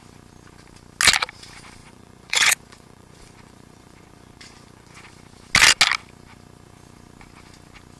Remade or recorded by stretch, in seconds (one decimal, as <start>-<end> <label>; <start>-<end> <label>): 0.0-1.8 recorded; 1.8-5.1 remade; 5.1-8.0 recorded